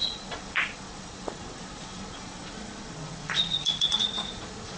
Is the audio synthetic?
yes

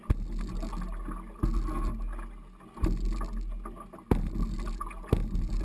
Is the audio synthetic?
no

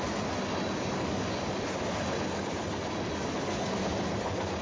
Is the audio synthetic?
no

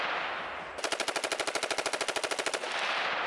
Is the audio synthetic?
no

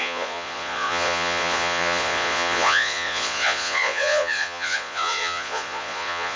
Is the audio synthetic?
yes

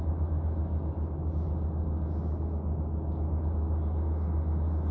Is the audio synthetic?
no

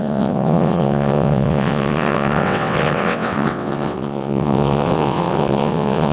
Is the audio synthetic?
yes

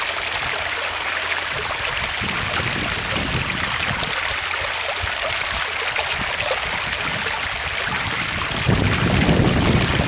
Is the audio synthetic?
no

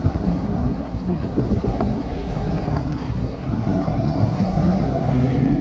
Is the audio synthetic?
yes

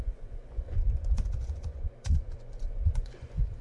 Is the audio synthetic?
yes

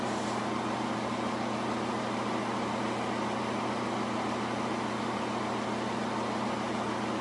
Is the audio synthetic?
no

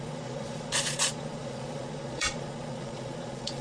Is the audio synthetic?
yes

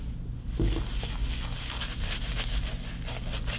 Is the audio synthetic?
no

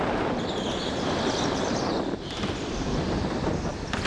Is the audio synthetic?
no